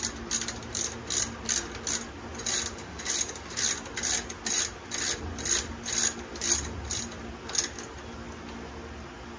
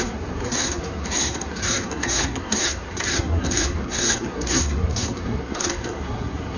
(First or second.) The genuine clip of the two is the first